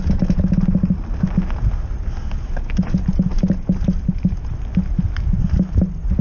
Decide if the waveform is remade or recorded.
recorded